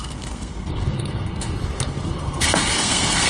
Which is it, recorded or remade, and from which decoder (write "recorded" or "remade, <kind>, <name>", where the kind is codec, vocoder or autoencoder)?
remade, codec, SNAC